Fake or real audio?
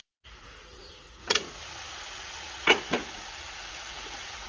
fake